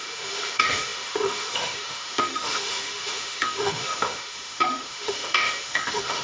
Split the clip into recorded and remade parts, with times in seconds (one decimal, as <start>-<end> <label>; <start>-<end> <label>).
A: 0.0-6.2 remade